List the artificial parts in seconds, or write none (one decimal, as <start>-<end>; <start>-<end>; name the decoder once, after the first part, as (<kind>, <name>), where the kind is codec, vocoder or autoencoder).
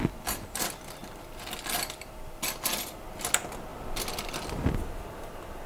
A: none